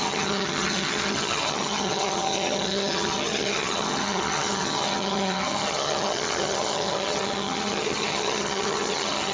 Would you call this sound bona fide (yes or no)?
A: no